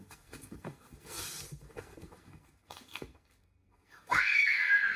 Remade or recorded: remade